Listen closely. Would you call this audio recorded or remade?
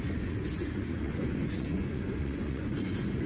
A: remade